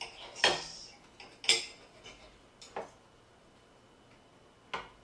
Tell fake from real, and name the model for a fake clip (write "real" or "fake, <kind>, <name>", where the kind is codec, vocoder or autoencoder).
real